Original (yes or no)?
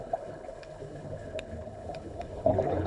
no